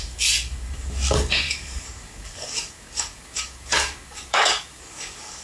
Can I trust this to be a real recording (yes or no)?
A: no